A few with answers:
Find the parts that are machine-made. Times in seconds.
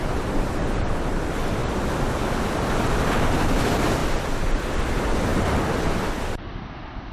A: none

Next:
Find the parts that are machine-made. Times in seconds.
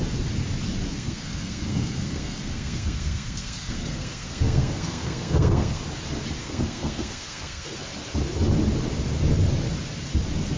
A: 0.9-5.8; 6.4-7.7